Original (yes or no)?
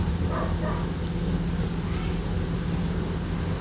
yes